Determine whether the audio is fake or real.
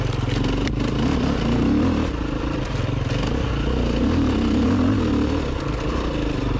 real